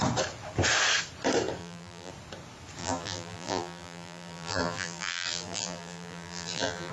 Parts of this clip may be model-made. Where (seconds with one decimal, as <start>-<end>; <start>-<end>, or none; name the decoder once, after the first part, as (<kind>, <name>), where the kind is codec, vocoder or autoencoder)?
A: 1.6-2.1 (vocoder, BigVGAN v2); 2.8-6.9